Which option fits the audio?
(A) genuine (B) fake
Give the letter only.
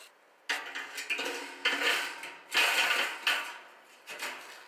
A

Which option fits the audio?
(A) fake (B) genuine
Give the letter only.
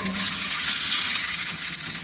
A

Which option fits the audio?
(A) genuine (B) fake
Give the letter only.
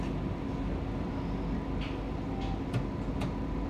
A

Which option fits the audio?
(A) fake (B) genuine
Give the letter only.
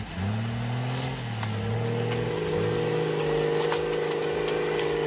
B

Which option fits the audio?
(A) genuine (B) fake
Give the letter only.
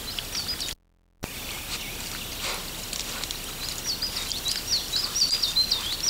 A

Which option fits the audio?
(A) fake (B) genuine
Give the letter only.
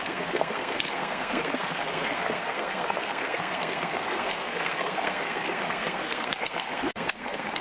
A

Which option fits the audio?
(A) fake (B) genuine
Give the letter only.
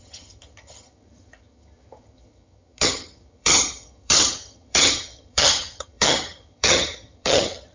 A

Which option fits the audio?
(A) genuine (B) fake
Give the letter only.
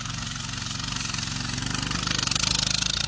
A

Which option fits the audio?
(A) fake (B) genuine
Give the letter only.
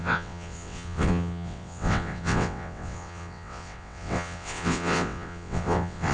A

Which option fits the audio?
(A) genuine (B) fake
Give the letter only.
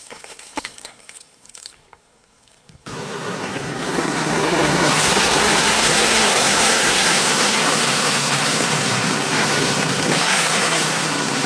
B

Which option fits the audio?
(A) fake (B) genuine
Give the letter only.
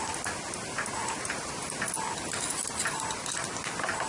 B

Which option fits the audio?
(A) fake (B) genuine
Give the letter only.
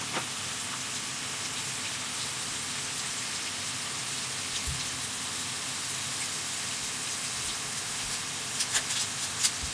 B